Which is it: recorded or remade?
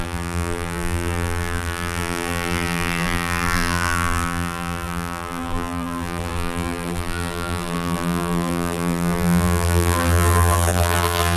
remade